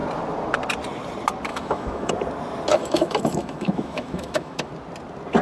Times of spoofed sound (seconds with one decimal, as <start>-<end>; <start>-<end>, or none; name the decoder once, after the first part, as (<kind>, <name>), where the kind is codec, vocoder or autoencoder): 1.5-2.1 (autoencoder, DAC-VAE); 2.7-4.7